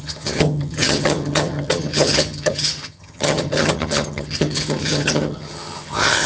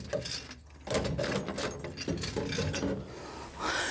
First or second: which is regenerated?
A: first